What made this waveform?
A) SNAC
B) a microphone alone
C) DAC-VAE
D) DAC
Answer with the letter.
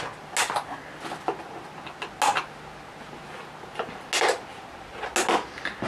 B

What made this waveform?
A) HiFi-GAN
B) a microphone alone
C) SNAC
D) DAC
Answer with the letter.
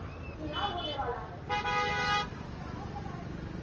B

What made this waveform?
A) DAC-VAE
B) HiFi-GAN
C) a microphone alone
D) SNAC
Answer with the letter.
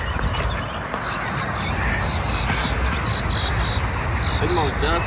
C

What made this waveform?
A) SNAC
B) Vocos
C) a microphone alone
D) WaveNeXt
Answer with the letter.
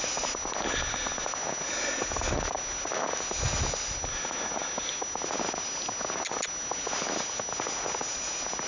C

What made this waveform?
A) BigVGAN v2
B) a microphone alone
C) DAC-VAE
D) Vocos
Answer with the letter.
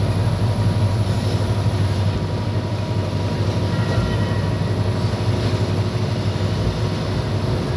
B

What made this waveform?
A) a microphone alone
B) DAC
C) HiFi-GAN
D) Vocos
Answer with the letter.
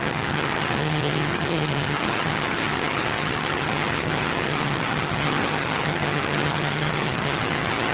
C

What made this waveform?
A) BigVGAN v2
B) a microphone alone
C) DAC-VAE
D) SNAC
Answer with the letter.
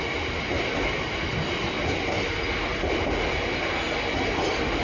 B